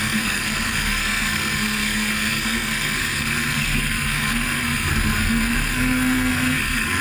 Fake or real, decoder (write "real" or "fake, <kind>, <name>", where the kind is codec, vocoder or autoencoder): fake, codec, SNAC